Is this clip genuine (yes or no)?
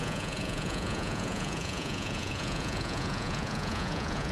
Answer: no